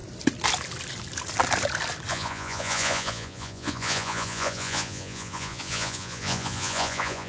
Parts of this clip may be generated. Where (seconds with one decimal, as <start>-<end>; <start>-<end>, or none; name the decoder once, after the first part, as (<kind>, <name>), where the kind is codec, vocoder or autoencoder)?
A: 2.1-7.3 (vocoder, Vocos)